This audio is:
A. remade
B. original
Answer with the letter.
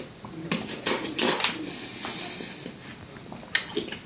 B